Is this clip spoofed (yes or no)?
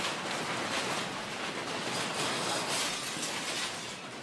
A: no